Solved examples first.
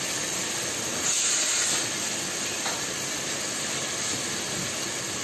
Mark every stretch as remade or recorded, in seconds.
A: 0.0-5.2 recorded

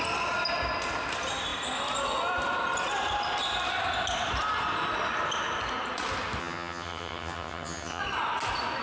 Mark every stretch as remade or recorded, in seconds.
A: 0.0-6.4 recorded; 6.4-8.0 remade; 8.0-8.8 recorded

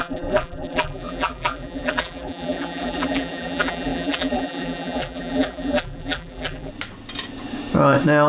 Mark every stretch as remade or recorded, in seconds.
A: 0.0-6.7 remade; 6.7-8.3 recorded

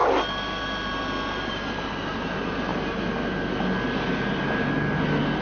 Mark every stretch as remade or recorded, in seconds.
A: 0.0-5.4 recorded

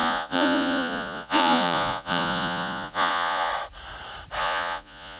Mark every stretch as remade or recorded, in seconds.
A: 0.0-3.5 remade; 3.5-4.4 recorded; 4.4-5.2 remade

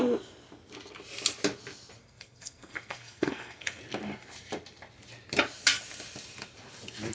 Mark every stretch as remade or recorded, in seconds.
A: 0.0-2.0 recorded; 2.0-3.8 remade; 3.8-7.1 recorded

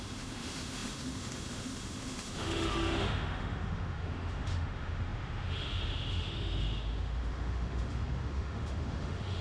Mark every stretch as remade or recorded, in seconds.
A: 0.0-9.4 remade

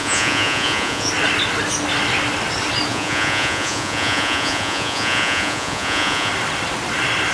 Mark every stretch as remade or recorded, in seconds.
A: 0.0-1.1 remade; 1.1-2.9 recorded; 2.9-6.3 remade; 6.3-7.3 recorded